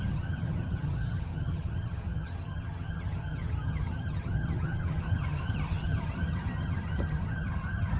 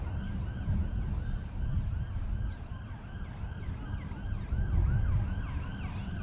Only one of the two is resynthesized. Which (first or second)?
first